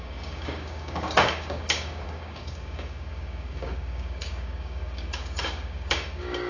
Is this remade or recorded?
remade